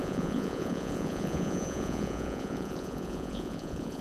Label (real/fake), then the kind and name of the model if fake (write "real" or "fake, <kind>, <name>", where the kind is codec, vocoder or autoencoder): fake, vocoder, Vocos